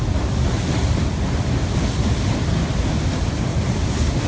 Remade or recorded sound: remade